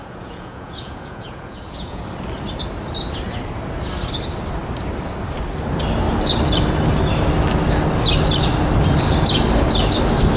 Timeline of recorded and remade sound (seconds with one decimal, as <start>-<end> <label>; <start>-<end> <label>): 0.0-2.0 remade; 2.0-10.4 recorded